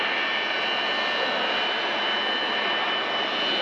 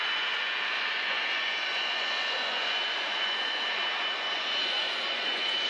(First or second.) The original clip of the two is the first